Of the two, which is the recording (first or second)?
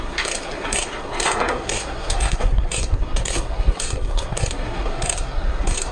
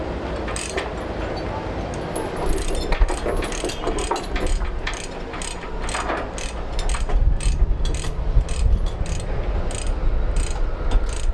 second